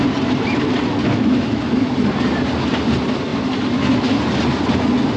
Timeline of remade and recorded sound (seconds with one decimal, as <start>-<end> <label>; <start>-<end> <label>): 0.0-1.0 recorded; 1.0-1.6 remade; 1.6-5.2 recorded